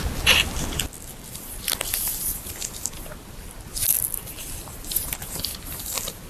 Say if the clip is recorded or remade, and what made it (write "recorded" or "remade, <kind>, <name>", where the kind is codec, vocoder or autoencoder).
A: recorded